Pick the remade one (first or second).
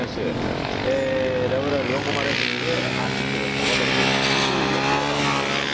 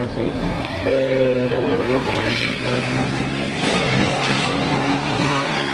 second